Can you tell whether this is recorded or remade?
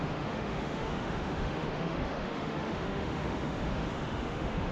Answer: remade